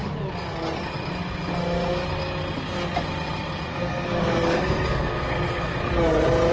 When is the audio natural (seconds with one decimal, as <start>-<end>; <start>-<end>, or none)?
0.0-3.7; 5.8-6.5

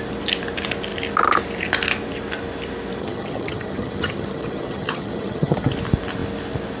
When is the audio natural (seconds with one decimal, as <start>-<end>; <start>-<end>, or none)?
0.0-3.0; 5.7-6.8

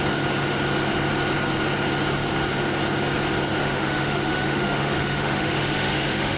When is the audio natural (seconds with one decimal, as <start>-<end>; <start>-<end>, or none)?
0.0-3.6

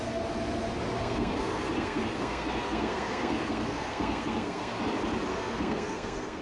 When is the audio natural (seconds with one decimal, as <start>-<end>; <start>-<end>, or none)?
0.0-1.0; 4.8-5.3